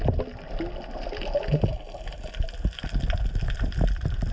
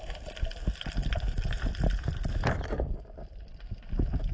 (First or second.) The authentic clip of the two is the first